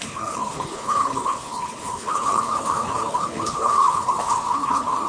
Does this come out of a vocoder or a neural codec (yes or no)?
yes